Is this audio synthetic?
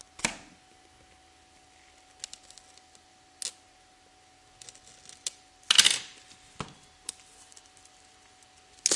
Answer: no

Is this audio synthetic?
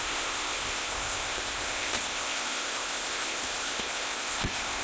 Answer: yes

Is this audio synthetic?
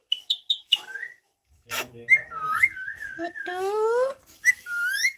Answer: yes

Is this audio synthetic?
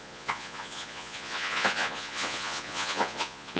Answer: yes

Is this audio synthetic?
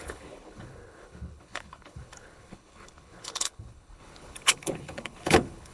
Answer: yes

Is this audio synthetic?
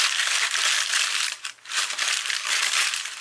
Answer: yes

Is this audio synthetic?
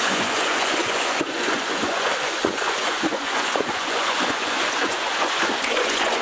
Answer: yes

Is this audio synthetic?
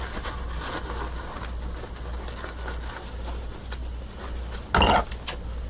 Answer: no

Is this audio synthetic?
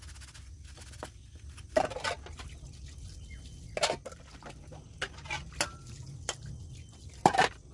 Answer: no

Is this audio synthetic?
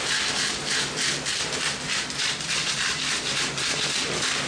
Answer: no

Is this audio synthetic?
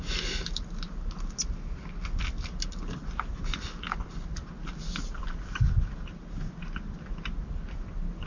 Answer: no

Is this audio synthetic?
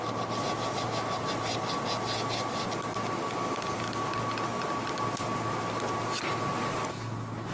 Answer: no